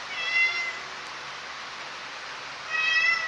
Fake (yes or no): no